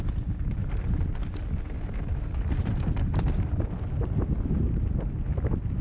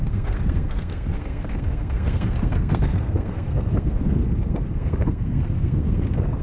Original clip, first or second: first